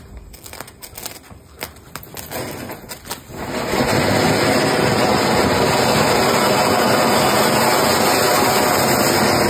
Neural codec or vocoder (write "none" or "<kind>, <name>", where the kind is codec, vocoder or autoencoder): none